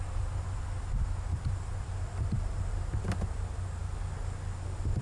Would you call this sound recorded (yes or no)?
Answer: yes